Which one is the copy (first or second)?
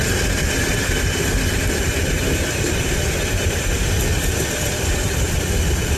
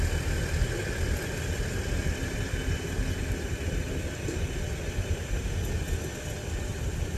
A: first